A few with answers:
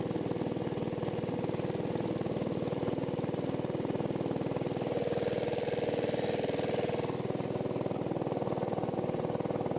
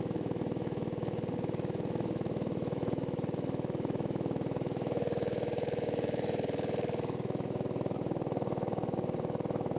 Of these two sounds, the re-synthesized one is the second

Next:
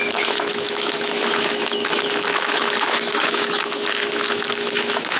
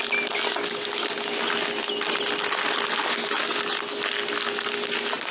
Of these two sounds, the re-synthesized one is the first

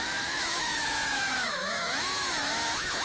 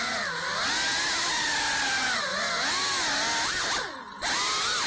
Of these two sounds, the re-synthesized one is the first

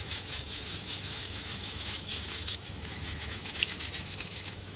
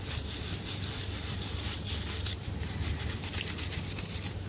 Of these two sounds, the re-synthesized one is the first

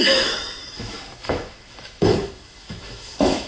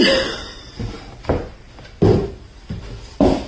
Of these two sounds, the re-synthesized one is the first